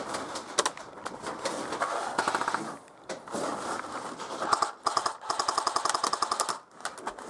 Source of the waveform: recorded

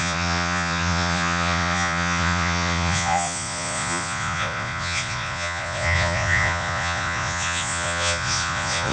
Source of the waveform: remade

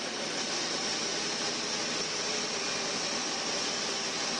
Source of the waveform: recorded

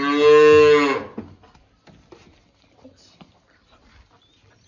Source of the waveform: recorded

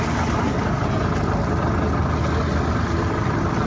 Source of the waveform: recorded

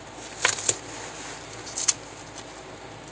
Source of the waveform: recorded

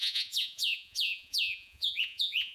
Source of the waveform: remade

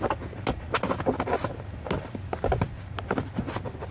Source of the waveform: recorded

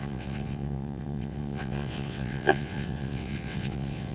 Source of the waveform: remade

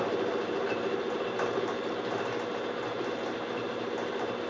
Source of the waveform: recorded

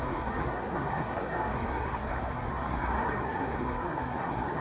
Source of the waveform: remade